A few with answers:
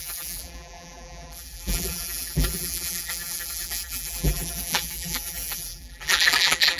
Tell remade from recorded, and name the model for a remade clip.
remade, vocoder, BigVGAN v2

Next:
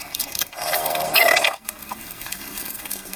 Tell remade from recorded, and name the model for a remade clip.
remade, codec, SNAC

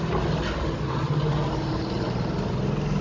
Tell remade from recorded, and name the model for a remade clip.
recorded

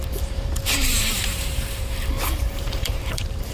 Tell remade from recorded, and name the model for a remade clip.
remade, vocoder, BigVGAN v2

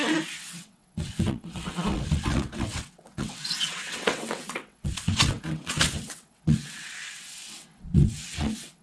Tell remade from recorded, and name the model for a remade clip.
remade, vocoder, WaveNeXt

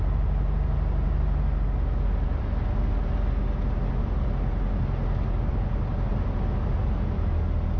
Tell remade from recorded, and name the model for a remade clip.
recorded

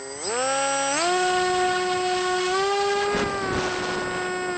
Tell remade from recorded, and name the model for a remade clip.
recorded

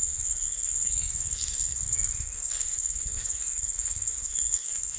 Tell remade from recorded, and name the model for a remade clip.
remade, codec, SNAC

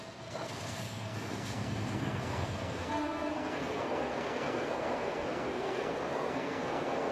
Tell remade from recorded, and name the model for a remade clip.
remade, codec, SNAC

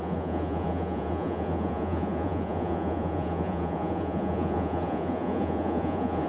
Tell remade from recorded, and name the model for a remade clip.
remade, vocoder, Vocos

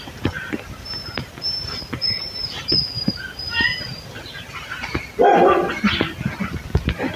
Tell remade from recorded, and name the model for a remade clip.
recorded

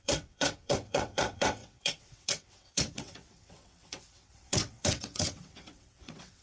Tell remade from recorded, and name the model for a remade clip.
remade, vocoder, WaveNeXt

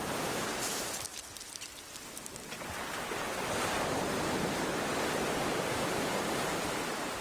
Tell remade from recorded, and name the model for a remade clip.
remade, vocoder, BigVGAN v2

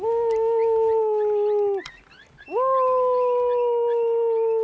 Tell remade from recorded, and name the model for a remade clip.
recorded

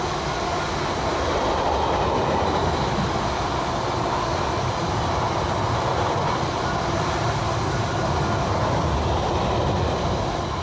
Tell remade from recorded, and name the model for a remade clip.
recorded